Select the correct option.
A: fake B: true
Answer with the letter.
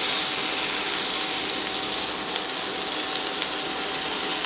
B